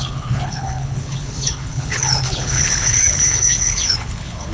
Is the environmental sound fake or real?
fake